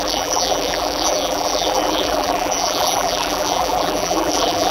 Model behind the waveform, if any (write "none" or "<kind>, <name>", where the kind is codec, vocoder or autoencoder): vocoder, BigVGAN v2